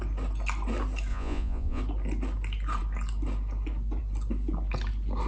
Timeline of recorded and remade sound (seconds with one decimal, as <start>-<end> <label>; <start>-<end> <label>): 0.0-1.1 recorded; 1.1-1.8 remade; 1.8-5.3 recorded